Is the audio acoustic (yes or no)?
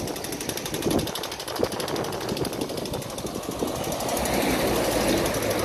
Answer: yes